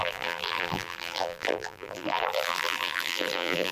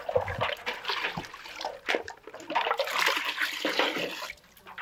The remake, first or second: first